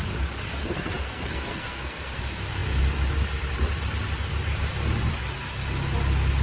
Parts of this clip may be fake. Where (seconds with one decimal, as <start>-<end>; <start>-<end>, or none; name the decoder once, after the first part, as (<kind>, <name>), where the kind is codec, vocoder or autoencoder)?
0.6-2.2 (codec, SNAC)